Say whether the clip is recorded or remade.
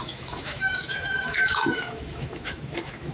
remade